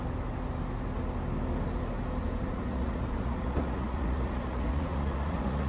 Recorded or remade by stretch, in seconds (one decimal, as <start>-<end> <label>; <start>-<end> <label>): 0.0-2.4 recorded; 2.4-5.7 remade